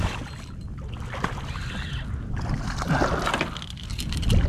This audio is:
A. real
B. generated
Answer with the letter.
A